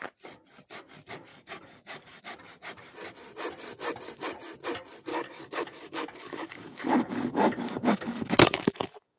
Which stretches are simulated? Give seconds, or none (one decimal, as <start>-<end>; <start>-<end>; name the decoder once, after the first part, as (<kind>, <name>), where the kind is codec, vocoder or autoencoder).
1.3-2.2 (codec, DAC); 5.1-9.2